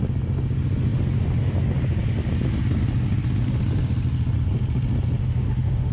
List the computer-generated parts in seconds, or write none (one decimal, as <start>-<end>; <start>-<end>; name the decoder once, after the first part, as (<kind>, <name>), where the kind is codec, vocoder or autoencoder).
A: 5.2-5.9 (autoencoder, DAC-VAE)